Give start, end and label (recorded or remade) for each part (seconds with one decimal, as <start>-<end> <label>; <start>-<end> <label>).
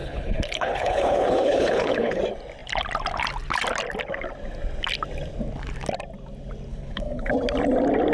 0.0-2.2 remade; 2.2-6.7 recorded; 6.7-7.3 remade; 7.3-8.1 recorded